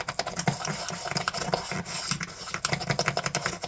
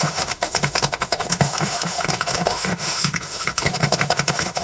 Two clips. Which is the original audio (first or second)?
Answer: first